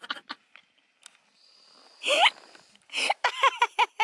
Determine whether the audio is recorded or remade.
recorded